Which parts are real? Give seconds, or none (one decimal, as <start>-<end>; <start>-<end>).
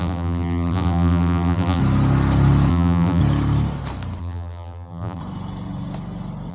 1.8-2.7; 3.2-4.2; 5.2-6.5